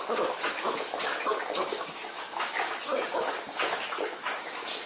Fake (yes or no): yes